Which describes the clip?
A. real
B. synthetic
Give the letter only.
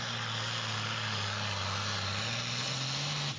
A